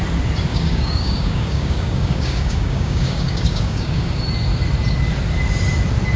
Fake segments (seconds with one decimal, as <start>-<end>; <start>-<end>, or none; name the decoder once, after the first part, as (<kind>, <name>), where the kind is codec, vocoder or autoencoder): 0.5-4.2 (codec, DAC)